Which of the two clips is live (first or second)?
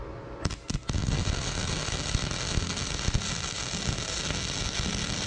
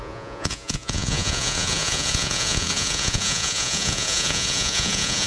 first